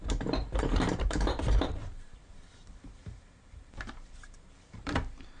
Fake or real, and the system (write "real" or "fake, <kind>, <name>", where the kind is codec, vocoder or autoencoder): fake, vocoder, BigVGAN v2